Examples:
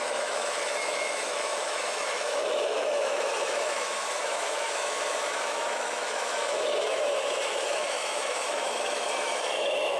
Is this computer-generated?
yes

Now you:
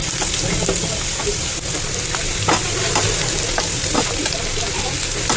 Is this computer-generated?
no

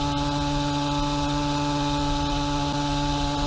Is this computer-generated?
no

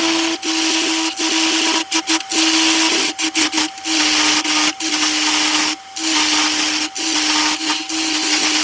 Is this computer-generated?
no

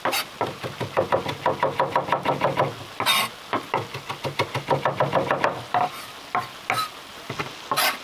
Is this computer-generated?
no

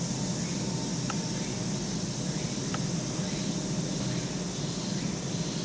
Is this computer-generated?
no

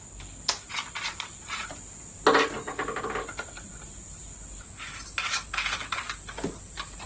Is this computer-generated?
no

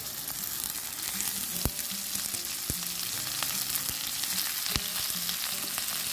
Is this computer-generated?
no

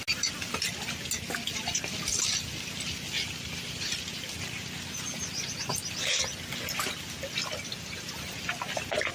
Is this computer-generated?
no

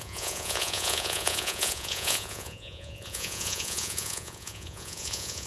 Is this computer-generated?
yes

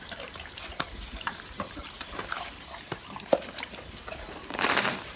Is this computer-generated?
yes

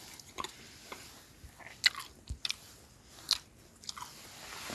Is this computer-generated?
no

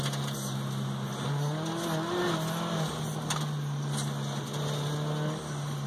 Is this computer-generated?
no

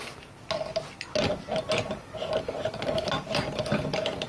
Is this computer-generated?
no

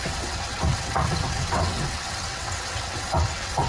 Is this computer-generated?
yes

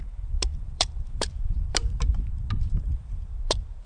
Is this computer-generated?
yes